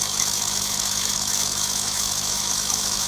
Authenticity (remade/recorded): remade